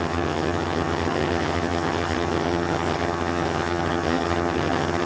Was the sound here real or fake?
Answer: fake